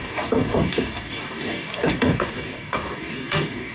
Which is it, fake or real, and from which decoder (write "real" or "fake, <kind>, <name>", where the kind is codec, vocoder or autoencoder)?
fake, codec, DAC